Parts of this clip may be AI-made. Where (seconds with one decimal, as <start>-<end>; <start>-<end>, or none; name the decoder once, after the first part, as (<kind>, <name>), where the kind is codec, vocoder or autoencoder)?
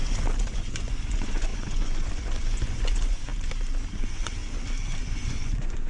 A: 0.5-3.3 (vocoder, Vocos); 4.0-4.4; 5.0-5.9